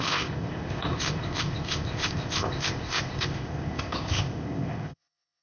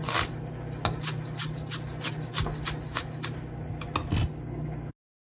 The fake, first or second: first